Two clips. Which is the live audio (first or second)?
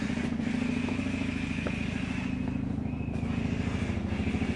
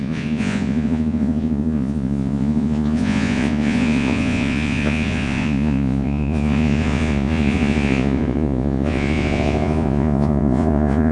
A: first